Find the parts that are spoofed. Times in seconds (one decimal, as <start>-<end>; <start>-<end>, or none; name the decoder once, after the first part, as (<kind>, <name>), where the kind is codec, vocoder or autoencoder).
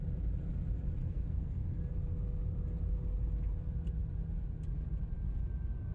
1.0-1.8 (codec, SNAC)